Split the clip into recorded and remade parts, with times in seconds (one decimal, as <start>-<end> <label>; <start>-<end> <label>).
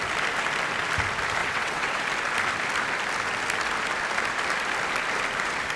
0.0-1.4 recorded; 1.4-2.0 remade; 2.0-5.8 recorded